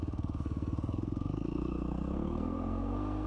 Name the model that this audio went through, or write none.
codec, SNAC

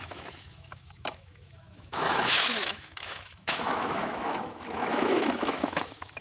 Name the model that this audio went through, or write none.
autoencoder, DAC-VAE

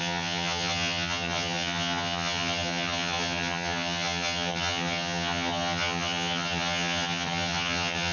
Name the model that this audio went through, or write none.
vocoder, HiFi-GAN